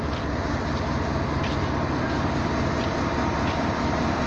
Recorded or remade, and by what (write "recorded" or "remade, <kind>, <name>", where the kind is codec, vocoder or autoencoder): remade, vocoder, BigVGAN v2